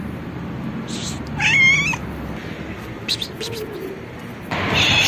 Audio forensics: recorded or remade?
recorded